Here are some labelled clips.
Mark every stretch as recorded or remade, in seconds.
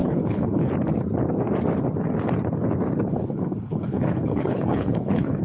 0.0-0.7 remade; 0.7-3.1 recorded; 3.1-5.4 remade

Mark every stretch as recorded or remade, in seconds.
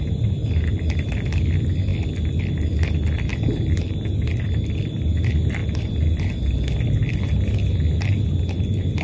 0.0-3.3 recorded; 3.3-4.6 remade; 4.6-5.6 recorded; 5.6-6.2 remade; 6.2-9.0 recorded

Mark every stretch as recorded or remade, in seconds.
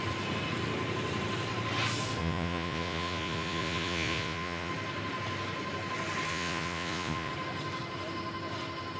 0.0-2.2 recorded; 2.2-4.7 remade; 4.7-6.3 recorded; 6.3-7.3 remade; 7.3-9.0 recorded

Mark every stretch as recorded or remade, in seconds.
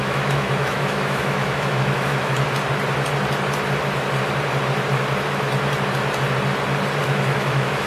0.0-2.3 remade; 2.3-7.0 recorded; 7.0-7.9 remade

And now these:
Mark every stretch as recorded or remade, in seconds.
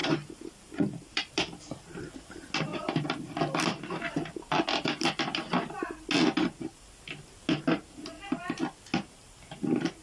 0.0-1.8 remade; 1.8-2.7 recorded; 2.7-5.9 remade; 5.9-10.0 recorded